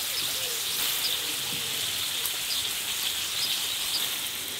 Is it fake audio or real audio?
real